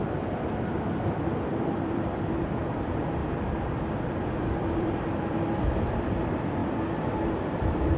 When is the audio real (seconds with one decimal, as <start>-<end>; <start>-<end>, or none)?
3.2-4.1; 6.6-7.3